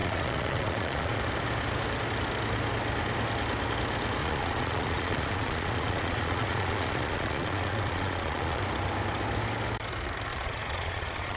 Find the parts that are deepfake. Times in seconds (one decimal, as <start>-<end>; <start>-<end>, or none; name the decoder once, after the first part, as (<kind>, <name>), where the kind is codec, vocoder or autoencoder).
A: 0.0-1.2 (vocoder, Vocos); 4.2-8.6; 10.3-11.4